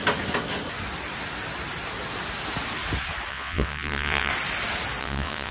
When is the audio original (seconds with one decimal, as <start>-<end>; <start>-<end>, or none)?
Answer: 0.0-3.3; 4.3-5.0